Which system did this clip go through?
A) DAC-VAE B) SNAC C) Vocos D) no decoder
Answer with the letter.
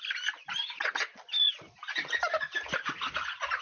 D